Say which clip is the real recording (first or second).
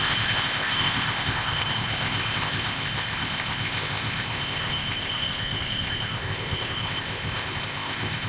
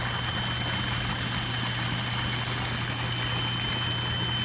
second